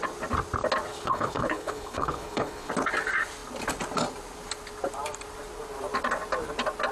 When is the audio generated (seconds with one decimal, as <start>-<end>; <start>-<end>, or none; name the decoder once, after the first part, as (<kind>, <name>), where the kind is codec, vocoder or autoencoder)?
0.9-2.7 (codec, HILCodec)